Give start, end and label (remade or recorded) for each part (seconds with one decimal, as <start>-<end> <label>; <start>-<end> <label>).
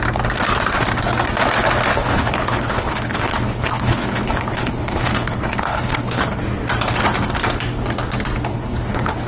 0.0-1.9 recorded; 1.9-6.4 remade; 6.4-8.5 recorded; 8.5-9.3 remade